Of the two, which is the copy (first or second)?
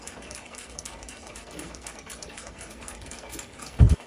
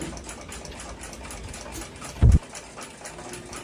first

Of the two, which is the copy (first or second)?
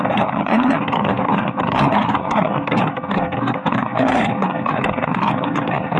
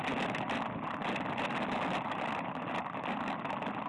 first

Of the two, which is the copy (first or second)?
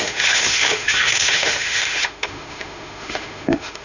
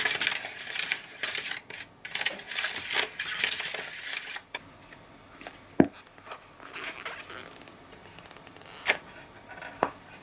first